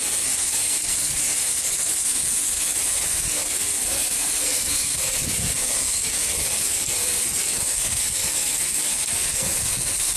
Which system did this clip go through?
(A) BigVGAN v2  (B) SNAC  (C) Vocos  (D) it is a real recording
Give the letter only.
B